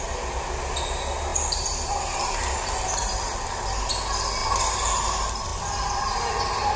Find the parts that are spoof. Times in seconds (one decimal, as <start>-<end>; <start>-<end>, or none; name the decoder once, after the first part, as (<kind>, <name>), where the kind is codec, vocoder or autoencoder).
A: none